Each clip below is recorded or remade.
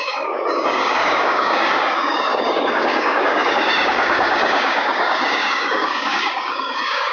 remade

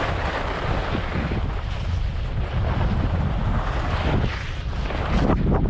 recorded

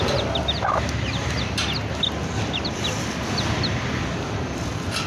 recorded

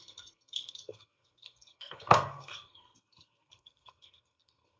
remade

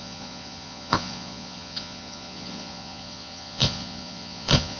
remade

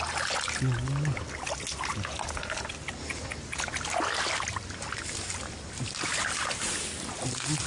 recorded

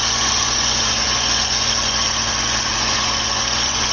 remade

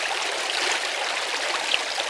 recorded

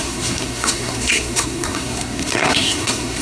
remade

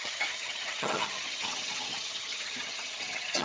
remade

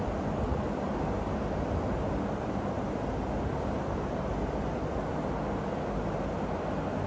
recorded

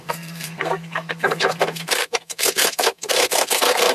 remade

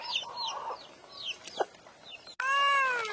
recorded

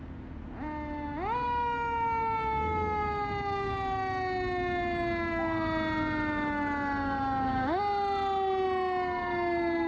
recorded